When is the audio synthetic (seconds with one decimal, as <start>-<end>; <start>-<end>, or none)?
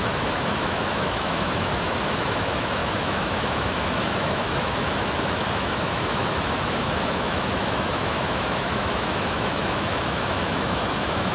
0.0-11.3